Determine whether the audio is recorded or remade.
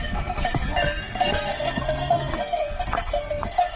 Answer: remade